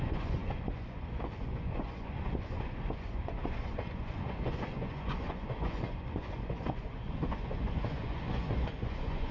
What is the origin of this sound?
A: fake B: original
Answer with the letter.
A